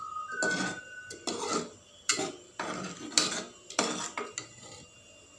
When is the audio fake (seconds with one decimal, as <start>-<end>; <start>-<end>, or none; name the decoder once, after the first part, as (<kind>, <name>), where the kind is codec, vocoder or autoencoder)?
none